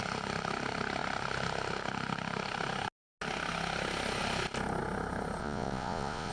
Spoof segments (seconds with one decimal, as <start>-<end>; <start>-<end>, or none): 5.4-6.3